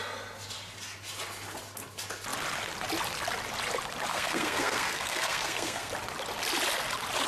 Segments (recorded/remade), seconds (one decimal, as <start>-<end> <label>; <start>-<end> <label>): 0.0-4.1 recorded; 4.1-5.9 remade; 5.9-7.3 recorded